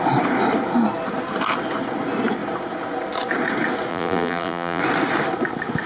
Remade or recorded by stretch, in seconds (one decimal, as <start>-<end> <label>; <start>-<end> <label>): 0.0-3.9 recorded; 3.9-4.8 remade; 4.8-5.9 recorded